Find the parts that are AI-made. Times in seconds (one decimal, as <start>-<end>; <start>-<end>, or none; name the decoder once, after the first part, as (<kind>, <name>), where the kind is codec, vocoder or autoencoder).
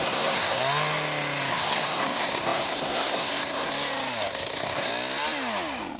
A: 0.0-0.6 (codec, SNAC); 1.5-3.7; 4.3-4.9